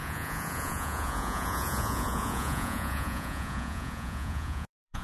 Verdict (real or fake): fake